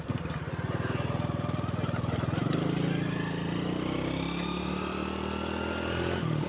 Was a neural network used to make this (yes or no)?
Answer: no